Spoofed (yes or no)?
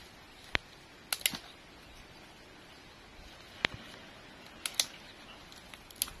no